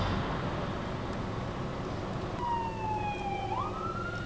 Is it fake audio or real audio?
real